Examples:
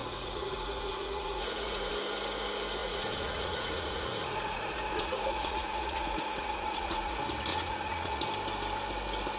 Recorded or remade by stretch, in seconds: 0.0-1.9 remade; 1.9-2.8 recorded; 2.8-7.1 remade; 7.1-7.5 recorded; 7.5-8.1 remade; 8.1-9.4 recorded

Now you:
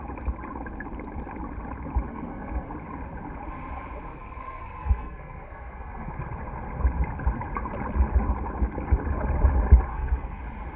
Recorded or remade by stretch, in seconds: 0.0-2.1 recorded; 2.1-2.7 remade; 2.7-4.1 recorded; 4.1-6.1 remade; 6.1-9.9 recorded; 9.9-10.4 remade; 10.4-10.8 recorded